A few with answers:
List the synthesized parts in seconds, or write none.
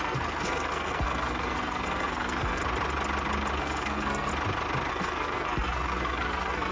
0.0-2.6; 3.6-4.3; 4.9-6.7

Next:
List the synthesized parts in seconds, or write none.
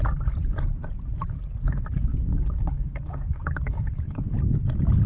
2.1-4.2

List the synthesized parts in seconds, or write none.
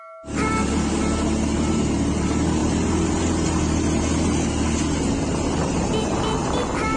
none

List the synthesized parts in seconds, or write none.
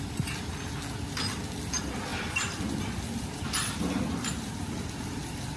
2.1-5.6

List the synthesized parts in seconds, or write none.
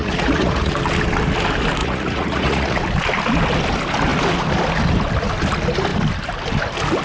0.0-0.7; 1.8-2.8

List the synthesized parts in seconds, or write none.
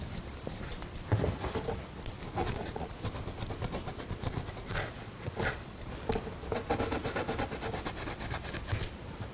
2.2-3.1; 3.8-5.9